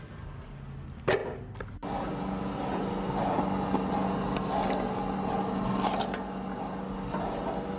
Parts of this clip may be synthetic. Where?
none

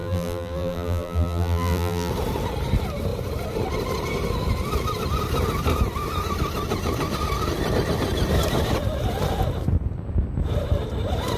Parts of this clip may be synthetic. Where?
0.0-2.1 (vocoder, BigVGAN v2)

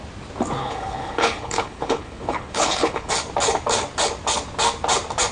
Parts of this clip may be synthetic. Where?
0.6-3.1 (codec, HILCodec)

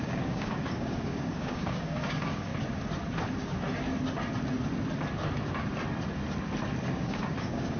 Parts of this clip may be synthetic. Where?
0.0-2.5 (codec, DAC); 6.9-7.8

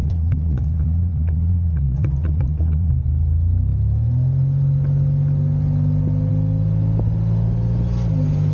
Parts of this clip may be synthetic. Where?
0.0-2.9 (vocoder, Vocos)

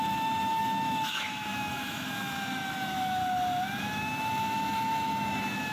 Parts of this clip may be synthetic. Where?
0.0-3.2 (autoencoder, DAC-VAE); 3.8-5.7

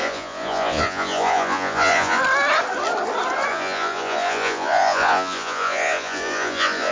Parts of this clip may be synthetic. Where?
0.0-2.2 (vocoder, Vocos); 3.5-6.9

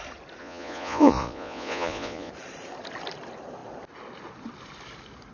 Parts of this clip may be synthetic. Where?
0.4-2.3 (vocoder, Vocos)